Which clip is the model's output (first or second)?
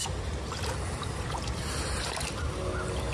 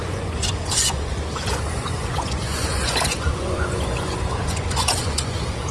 second